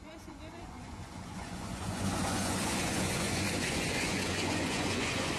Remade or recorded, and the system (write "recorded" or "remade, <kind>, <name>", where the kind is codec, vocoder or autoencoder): remade, vocoder, Vocos